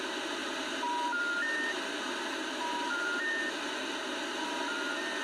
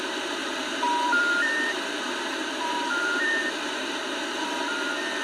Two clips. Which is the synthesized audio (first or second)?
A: second